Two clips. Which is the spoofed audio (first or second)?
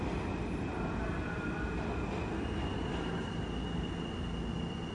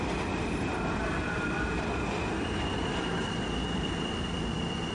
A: second